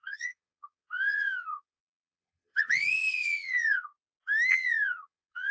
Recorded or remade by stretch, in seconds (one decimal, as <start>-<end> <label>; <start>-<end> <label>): 0.0-3.9 remade; 3.9-4.5 recorded; 4.5-5.5 remade